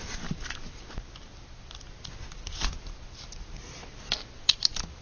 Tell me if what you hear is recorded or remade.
recorded